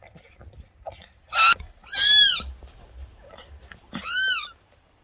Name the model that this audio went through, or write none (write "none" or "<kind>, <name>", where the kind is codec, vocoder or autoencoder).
none